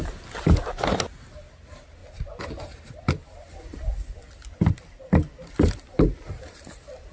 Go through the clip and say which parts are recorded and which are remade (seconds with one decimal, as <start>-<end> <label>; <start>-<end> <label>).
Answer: 0.0-7.1 recorded